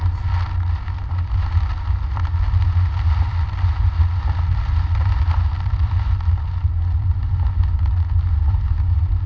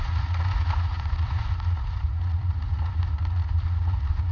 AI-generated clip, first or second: second